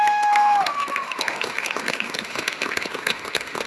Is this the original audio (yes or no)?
no